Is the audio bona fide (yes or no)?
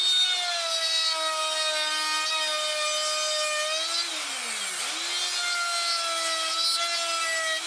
yes